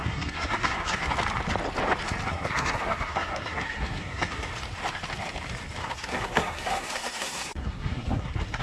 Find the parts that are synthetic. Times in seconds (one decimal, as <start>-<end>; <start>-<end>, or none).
0.0-1.1; 2.3-4.5; 5.8-8.6